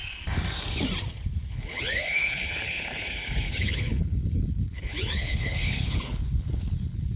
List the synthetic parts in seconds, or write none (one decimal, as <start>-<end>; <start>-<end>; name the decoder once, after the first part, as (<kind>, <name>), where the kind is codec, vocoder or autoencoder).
1.5-7.2 (codec, HILCodec)